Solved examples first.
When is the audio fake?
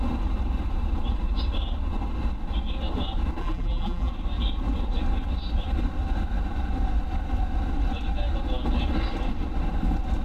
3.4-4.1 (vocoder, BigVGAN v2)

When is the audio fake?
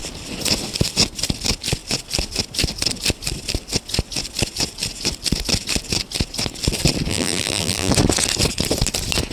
7.1-7.9 (vocoder, BigVGAN v2)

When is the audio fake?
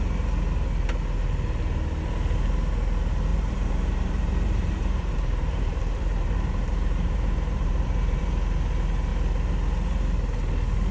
3.3-8.2 (vocoder, BigVGAN v2)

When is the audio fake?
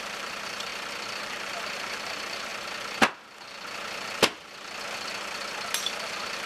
0.0-0.7 (vocoder, BigVGAN v2); 1.2-2.5; 5.8-6.5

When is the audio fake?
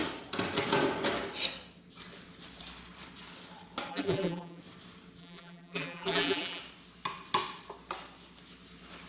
3.9-4.6 (vocoder, BigVGAN v2); 5.2-6.6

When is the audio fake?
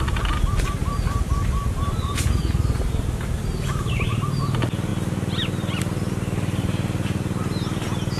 0.8-1.3 (vocoder, BigVGAN v2)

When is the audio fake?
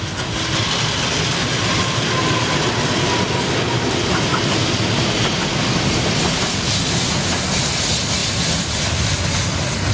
8.2-9.0 (vocoder, BigVGAN v2)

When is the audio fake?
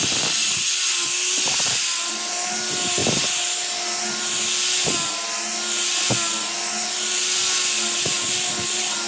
none